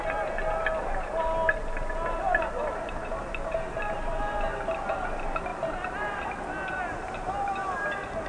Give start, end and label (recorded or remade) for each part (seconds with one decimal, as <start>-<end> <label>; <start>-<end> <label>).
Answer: 0.0-8.3 recorded